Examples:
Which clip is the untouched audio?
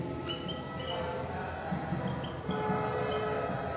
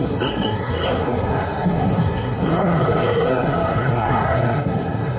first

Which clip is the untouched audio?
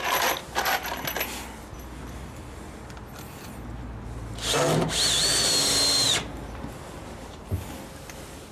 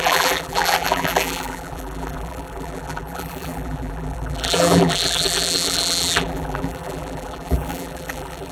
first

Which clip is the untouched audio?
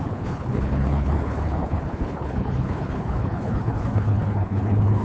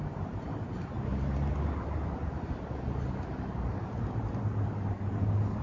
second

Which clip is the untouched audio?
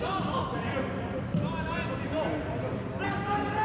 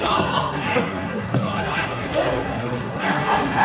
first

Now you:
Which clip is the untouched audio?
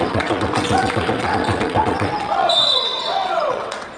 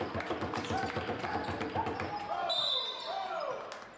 second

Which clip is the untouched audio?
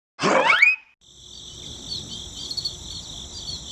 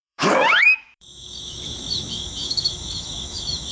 first